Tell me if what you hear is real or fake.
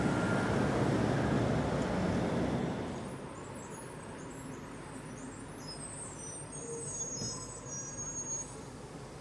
real